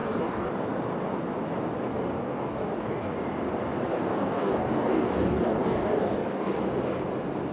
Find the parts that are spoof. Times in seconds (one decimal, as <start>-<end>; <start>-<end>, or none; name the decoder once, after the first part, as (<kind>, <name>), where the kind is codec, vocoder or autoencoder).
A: 0.0-0.5 (codec, DAC); 1.9-3.1; 3.9-6.6